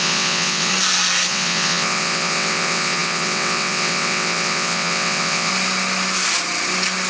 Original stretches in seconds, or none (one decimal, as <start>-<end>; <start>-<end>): 0.7-1.3; 5.5-7.1